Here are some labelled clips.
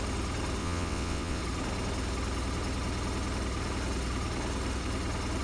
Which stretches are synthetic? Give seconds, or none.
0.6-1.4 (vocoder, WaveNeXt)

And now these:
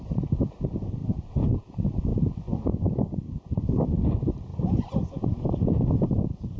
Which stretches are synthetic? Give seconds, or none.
1.0-1.7 (vocoder, BigVGAN v2); 4.5-6.6

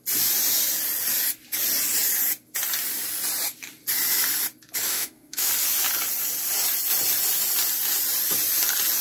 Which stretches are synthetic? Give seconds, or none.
4.9-5.5 (autoencoder, DAC-VAE)

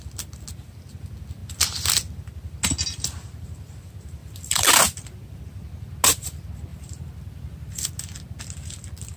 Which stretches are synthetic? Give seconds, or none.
4.2-5.4 (vocoder, BigVGAN v2); 6.7-8.0